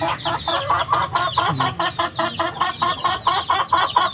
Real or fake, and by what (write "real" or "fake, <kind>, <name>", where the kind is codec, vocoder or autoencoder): real